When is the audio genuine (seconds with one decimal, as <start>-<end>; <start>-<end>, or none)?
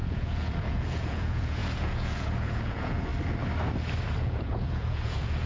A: 3.1-4.2